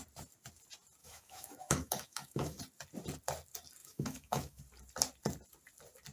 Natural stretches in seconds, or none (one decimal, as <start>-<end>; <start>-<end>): 0.0-1.0; 2.6-3.8; 4.6-6.1